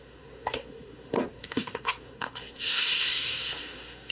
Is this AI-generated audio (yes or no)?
yes